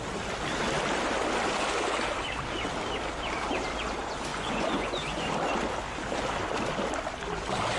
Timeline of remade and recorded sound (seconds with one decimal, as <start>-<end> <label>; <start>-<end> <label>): 0.0-4.3 recorded; 4.3-5.3 remade; 5.3-7.8 recorded